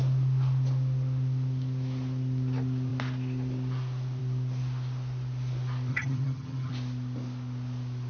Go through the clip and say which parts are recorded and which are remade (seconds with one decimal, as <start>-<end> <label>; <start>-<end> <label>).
0.0-5.9 recorded; 5.9-6.7 remade; 6.7-8.1 recorded